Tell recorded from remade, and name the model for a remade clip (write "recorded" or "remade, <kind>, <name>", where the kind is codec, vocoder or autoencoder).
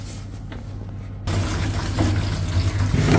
recorded